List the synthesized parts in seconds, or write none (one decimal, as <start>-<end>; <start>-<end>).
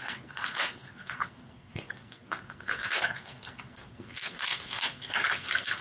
0.0-5.8